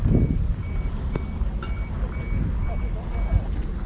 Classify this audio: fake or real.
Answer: real